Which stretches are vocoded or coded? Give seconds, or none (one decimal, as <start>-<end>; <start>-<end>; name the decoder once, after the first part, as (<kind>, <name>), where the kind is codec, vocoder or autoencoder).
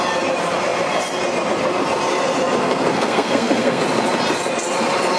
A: 2.6-3.8 (codec, SNAC)